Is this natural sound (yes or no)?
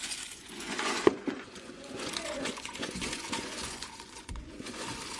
no